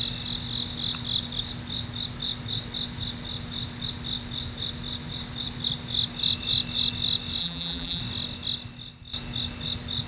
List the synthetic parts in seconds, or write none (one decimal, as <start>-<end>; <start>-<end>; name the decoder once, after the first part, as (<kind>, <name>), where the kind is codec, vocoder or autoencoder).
7.4-8.0 (vocoder, BigVGAN v2)